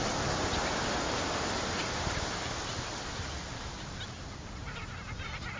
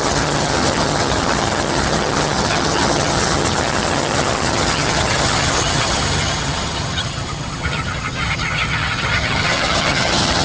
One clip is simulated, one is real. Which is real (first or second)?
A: first